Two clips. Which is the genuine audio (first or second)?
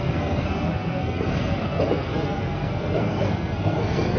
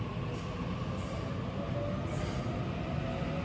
second